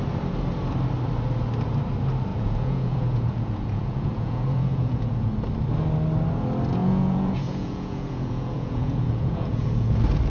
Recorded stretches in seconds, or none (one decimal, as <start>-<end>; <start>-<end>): 0.0-2.3; 5.3-6.8; 9.9-10.3